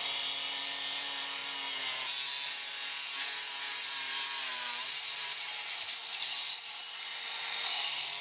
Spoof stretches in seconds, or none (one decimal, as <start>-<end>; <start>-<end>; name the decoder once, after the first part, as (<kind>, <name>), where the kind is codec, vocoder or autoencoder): 0.0-1.4 (vocoder, BigVGAN v2); 3.7-8.2